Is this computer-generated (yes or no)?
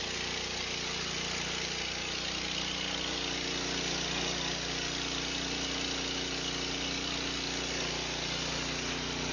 no